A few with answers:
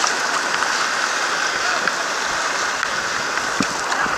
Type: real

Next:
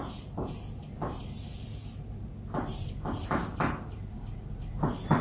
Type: real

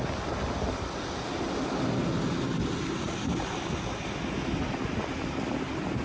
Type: real